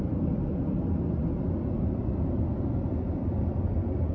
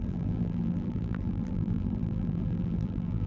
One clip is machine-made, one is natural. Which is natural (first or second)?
first